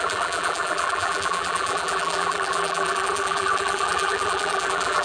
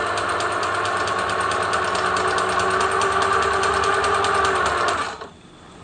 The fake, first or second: first